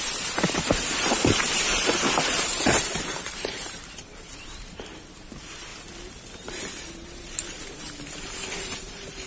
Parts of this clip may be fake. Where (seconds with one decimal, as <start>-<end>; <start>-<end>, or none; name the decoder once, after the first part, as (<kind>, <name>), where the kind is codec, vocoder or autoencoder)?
0.0-5.7 (vocoder, BigVGAN v2); 6.9-9.3